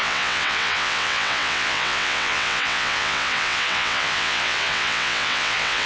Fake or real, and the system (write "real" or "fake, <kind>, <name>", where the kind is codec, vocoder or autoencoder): fake, vocoder, WaveNeXt